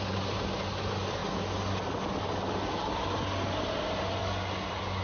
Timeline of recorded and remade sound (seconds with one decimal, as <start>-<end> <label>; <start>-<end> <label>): 0.0-5.0 recorded